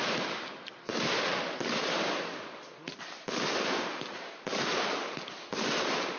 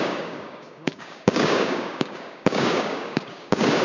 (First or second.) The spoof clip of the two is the second